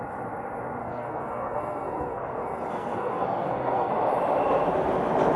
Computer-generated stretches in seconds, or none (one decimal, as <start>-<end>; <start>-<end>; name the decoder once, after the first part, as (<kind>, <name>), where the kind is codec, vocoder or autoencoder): 0.8-3.9 (codec, SNAC)